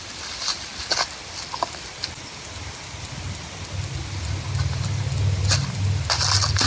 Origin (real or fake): real